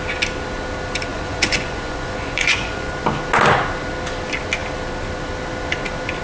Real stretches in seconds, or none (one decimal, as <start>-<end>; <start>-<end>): 0.0-1.1; 2.9-6.2